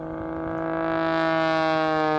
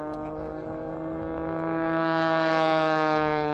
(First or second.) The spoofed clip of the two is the second